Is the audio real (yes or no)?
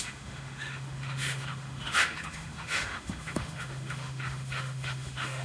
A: no